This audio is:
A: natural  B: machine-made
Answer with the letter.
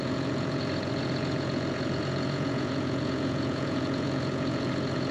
B